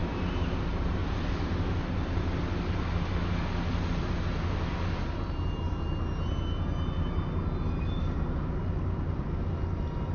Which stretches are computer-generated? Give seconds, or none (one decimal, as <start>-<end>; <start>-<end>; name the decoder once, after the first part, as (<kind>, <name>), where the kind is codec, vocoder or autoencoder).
0.0-0.5 (vocoder, BigVGAN v2); 1.0-1.8